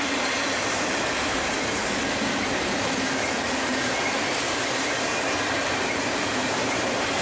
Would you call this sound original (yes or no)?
no